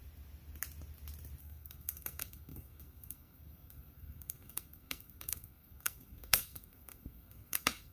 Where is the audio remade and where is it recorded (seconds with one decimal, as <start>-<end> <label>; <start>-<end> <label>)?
0.0-1.4 recorded; 1.4-7.9 remade